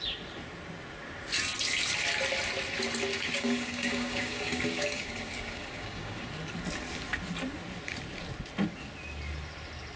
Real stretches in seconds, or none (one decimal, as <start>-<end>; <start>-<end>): 0.0-3.1; 6.3-10.0